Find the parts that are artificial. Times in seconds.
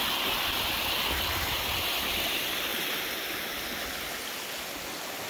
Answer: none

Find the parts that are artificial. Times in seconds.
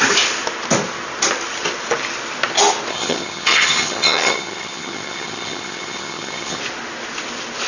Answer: 2.9-6.6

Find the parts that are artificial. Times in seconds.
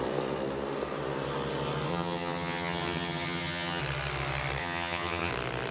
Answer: 1.9-3.8; 4.6-5.3